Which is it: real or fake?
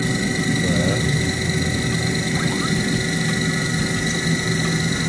real